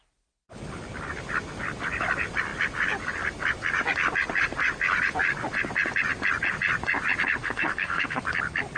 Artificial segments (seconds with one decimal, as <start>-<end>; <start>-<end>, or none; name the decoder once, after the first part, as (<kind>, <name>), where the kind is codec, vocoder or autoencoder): 7.4-8.2 (codec, SNAC)